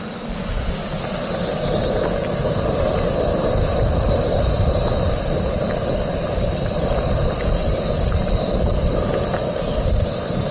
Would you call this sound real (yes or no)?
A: yes